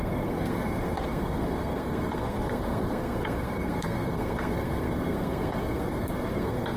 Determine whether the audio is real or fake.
fake